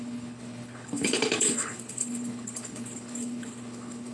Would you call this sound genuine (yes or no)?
no